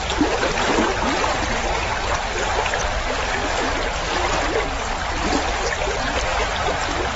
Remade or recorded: recorded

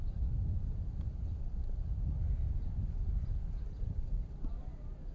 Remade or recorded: remade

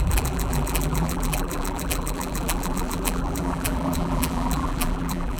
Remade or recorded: remade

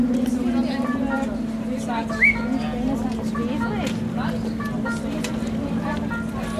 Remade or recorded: recorded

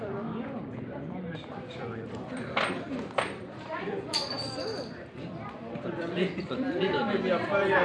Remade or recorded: remade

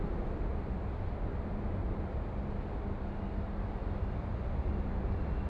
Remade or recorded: recorded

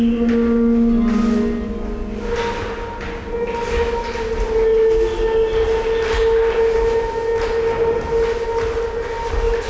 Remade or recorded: recorded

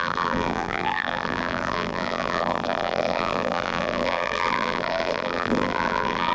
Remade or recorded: remade